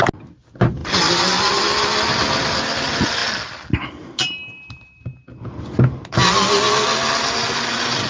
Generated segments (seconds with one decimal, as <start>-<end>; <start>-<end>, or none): none